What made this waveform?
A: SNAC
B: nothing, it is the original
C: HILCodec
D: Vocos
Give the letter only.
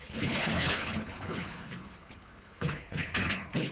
C